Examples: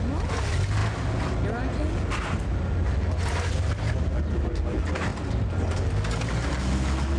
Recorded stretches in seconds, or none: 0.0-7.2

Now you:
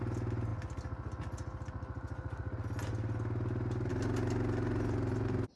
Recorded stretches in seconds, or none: 0.0-5.6

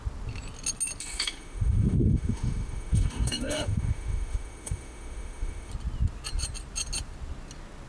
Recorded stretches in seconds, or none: 0.0-1.0; 5.7-7.9

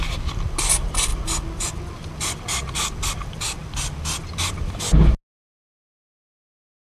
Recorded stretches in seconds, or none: 0.0-6.9

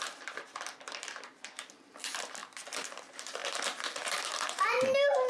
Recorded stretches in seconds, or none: 3.4-4.5

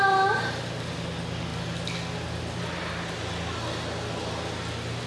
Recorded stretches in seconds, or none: 0.0-5.1